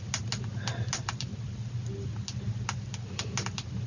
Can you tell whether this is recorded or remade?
recorded